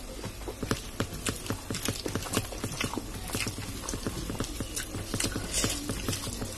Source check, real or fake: real